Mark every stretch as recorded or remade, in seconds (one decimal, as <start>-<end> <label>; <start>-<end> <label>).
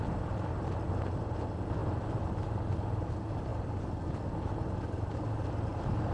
0.0-6.1 recorded